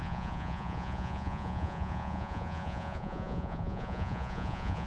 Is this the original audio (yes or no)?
no